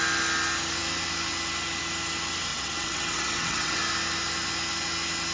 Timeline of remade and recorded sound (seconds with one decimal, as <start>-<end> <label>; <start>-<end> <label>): 0.0-2.5 recorded; 2.5-3.8 remade; 3.8-5.3 recorded